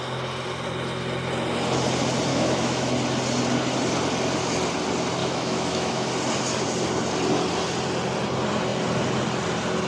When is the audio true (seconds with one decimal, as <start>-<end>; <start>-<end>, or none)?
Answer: 0.0-2.3; 2.9-5.2; 6.1-9.9